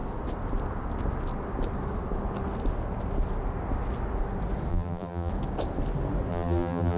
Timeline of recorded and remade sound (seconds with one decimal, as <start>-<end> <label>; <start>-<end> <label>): 0.0-4.7 recorded; 4.7-5.3 remade; 5.3-6.3 recorded; 6.3-7.0 remade